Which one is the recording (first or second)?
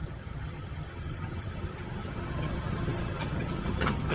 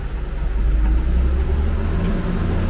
second